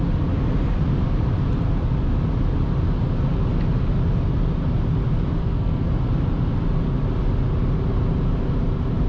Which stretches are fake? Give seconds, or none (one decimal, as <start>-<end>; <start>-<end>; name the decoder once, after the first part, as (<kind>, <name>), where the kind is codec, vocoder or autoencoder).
5.4-5.9 (codec, SNAC)